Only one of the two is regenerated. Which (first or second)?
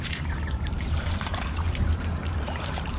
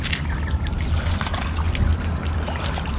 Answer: first